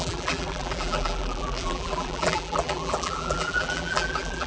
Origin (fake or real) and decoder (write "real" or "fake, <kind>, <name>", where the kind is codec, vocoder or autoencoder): fake, vocoder, BigVGAN v2